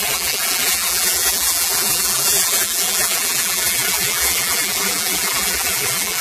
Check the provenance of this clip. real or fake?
fake